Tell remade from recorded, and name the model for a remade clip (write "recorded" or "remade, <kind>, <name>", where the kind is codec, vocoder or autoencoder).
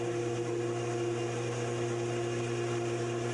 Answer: recorded